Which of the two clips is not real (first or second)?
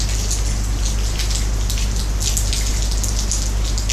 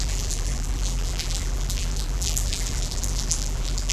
second